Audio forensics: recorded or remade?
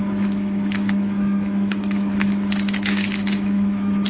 remade